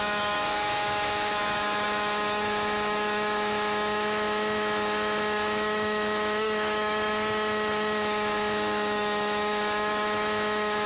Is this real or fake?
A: fake